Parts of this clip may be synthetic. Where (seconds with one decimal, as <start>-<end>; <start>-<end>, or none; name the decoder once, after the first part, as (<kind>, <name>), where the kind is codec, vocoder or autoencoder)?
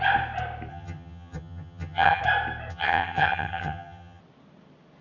0.7-2.2 (vocoder, HiFi-GAN); 2.7-4.2